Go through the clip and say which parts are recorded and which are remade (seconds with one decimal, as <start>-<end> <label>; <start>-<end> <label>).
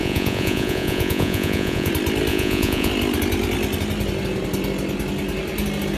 0.0-1.9 remade; 1.9-2.3 recorded; 2.3-2.9 remade; 2.9-6.0 recorded